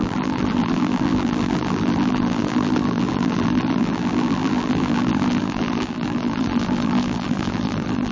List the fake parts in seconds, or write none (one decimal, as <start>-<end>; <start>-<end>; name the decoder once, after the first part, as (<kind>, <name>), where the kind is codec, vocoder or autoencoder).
0.0-8.1 (vocoder, BigVGAN v2)